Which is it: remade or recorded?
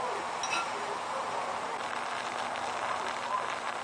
recorded